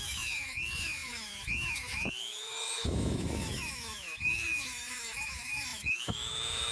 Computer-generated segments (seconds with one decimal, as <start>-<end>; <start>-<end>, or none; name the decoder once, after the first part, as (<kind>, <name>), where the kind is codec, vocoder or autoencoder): 0.0-6.7 (autoencoder, DAC-VAE)

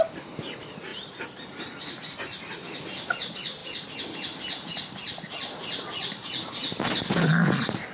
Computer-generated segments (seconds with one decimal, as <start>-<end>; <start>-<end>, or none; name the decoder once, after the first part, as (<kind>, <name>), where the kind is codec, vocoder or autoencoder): none

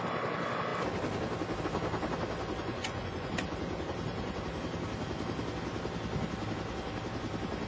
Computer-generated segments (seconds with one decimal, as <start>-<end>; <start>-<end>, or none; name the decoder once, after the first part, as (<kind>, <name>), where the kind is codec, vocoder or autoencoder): 2.6-3.3 (vocoder, Vocos)

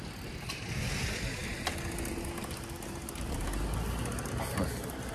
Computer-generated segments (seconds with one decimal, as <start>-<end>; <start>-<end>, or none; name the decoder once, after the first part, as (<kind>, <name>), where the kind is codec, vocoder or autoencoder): none